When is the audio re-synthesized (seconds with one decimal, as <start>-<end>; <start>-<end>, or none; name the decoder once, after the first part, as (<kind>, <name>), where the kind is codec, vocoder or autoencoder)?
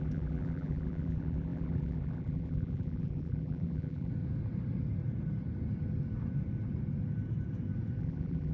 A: 0.0-4.1 (vocoder, BigVGAN v2); 8.0-8.5